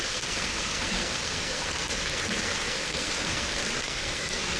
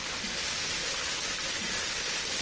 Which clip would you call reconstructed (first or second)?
first